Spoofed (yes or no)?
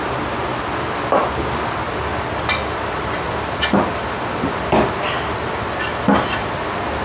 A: no